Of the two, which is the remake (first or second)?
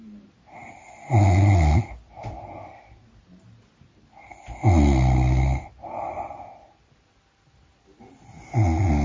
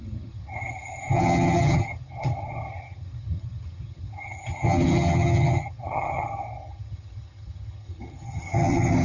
second